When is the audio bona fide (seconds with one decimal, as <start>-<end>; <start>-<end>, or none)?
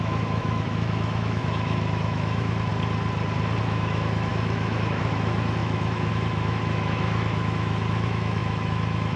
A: 2.7-3.6